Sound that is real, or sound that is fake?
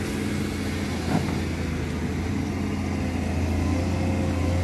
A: real